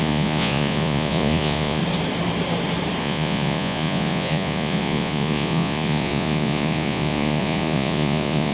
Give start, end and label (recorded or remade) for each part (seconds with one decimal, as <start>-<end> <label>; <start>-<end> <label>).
0.0-1.8 remade; 1.8-3.0 recorded; 3.0-8.5 remade